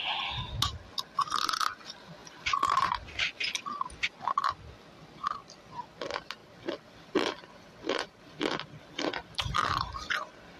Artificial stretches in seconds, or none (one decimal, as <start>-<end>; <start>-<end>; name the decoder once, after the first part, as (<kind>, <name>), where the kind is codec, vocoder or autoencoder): 2.2-3.6 (vocoder, BigVGAN v2); 6.4-10.1